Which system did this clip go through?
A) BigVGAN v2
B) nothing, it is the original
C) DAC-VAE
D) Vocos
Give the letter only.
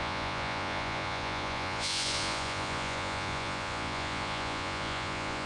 D